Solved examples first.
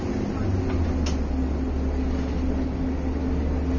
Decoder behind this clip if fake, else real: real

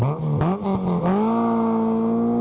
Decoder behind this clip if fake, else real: real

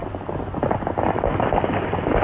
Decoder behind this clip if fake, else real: real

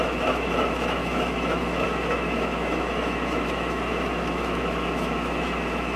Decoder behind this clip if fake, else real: fake, autoencoder, DAC-VAE